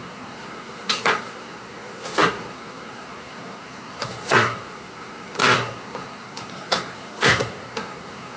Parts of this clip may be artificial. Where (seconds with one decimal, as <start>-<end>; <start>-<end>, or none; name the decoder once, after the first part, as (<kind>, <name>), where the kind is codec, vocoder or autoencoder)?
0.0-8.4 (codec, SNAC)